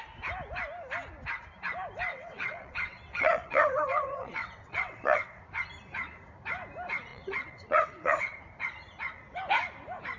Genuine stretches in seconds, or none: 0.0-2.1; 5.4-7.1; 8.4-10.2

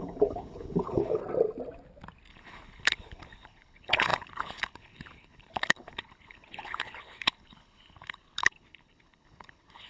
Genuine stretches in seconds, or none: 1.2-2.3

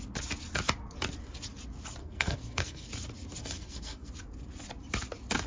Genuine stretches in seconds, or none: 0.0-2.0; 2.9-3.4; 4.1-5.5

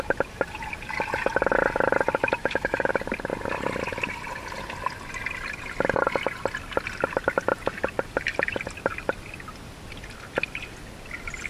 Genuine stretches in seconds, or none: 0.0-2.4; 2.9-11.5

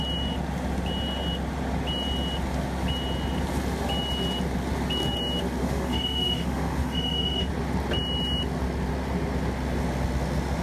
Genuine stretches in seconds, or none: 0.0-5.6; 7.5-10.6

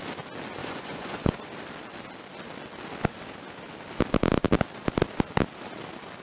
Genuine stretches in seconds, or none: 0.0-0.6; 1.5-6.2

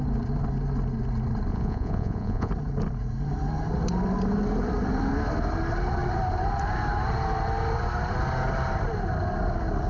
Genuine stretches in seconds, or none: 0.0-1.5; 2.5-9.9

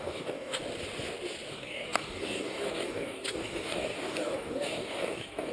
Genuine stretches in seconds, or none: 0.6-1.5